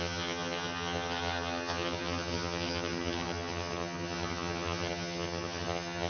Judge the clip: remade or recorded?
remade